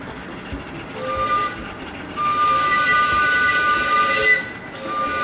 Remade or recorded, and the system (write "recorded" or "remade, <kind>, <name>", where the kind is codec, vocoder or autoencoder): recorded